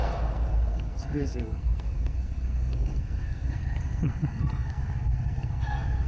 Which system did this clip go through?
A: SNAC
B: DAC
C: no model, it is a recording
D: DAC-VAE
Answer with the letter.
A